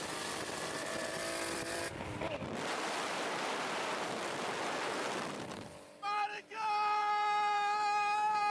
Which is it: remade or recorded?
remade